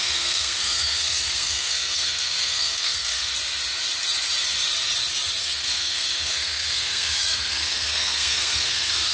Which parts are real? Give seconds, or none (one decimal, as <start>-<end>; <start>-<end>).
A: 3.3-5.4